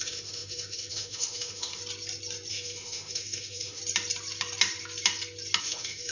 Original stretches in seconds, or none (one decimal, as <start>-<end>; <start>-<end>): 1.8-2.5; 3.8-5.6